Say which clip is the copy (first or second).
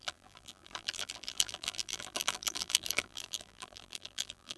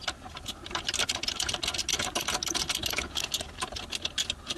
first